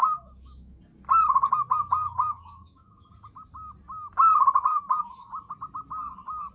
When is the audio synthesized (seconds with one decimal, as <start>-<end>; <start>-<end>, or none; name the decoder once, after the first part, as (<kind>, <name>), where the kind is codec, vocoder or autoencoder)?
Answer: 0.0-0.8 (autoencoder, DAC-VAE); 2.0-3.1; 4.7-5.3